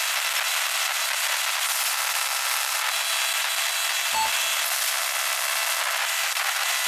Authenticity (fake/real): real